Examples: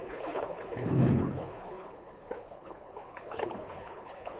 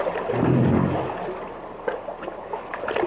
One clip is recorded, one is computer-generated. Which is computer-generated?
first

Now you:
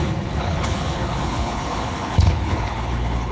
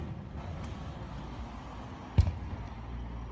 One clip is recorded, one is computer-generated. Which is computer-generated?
first